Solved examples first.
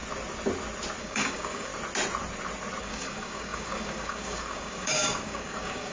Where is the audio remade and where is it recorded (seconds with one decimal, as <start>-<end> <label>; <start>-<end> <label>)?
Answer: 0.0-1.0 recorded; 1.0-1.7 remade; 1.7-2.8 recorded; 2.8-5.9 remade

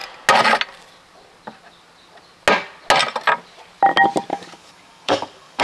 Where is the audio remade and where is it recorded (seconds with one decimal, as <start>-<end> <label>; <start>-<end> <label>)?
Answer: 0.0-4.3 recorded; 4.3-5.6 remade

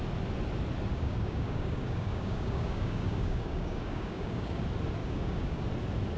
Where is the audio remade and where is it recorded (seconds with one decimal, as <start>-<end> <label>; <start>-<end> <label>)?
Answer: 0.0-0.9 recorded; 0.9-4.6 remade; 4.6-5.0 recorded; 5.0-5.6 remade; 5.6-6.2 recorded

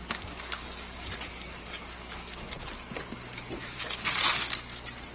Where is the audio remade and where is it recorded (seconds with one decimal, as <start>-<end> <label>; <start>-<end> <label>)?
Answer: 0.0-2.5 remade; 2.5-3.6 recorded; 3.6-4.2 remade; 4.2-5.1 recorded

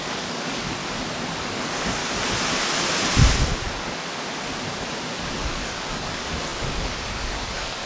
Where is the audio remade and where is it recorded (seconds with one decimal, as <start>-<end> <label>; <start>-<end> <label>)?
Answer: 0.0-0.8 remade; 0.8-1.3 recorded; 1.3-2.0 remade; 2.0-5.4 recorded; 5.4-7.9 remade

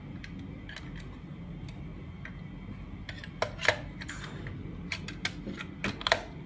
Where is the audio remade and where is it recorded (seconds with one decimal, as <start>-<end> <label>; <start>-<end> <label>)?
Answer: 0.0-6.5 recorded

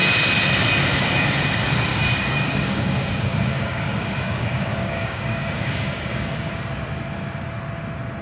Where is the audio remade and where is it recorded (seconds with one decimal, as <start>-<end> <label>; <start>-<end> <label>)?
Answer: 0.0-1.9 recorded; 1.9-6.5 remade; 6.5-8.2 recorded

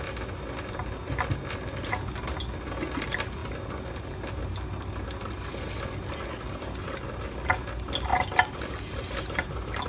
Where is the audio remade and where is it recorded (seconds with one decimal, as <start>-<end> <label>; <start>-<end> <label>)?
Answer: 0.0-9.9 recorded